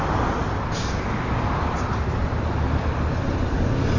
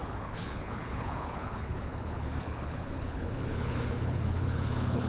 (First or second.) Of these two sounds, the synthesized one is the second